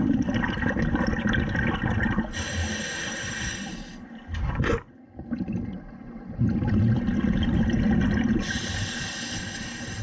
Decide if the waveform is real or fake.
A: real